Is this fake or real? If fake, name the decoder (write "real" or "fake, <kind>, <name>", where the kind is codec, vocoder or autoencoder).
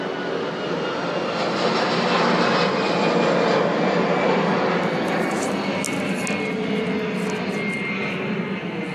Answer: real